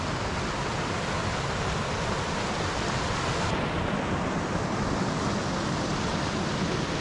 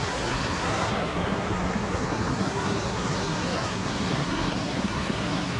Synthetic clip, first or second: second